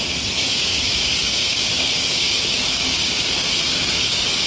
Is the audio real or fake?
fake